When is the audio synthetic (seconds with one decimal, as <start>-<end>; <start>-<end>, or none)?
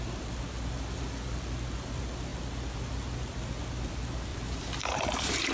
4.3-5.5